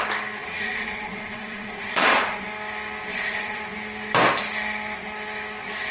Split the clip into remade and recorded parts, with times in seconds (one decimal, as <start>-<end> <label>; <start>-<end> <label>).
0.0-0.4 recorded; 0.4-2.4 remade; 2.4-3.1 recorded; 3.1-3.6 remade; 3.6-5.9 recorded